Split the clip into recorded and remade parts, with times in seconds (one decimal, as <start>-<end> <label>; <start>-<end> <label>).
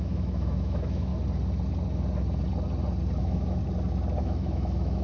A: 0.0-1.1 remade; 1.1-3.2 recorded; 3.2-3.6 remade; 3.6-4.2 recorded; 4.2-5.0 remade